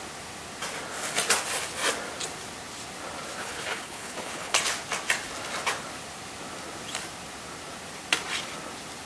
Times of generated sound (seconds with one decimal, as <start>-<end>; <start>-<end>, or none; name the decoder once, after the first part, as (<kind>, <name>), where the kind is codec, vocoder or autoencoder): 3.4-4.6 (codec, HILCodec)